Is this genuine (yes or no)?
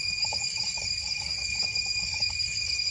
no